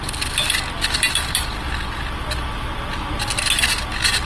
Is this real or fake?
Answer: real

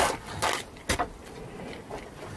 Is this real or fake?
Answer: real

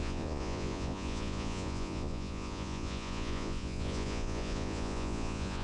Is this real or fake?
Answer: fake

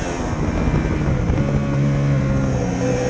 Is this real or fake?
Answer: real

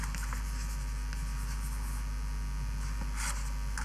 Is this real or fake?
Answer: real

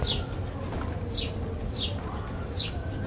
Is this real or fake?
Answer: real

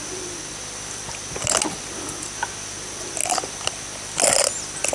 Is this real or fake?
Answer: real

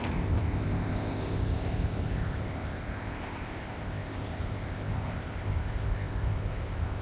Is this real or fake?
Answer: fake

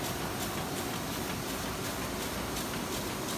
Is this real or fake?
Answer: real